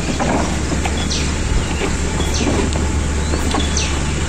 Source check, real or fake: real